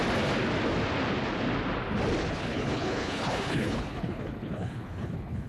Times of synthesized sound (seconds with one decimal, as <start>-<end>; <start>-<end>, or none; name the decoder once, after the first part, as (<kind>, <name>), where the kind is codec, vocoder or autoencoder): 2.3-5.5 (codec, HILCodec)